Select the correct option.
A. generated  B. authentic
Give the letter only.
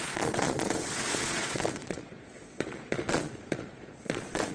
A